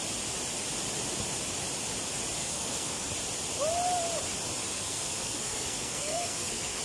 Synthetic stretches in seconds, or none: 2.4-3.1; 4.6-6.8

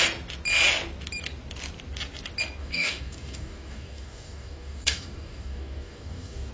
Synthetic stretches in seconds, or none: 2.6-6.5